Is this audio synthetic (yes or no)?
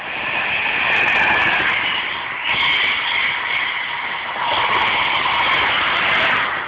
no